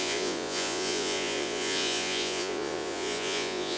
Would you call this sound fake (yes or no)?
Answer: yes